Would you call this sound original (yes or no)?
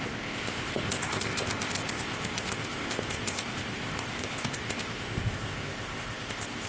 no